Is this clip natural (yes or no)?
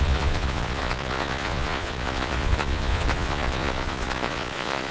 no